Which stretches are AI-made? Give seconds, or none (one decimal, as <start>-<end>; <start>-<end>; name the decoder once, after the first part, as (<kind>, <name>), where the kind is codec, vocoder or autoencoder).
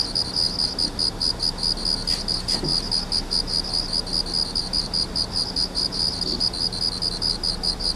none